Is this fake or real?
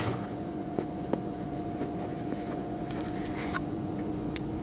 fake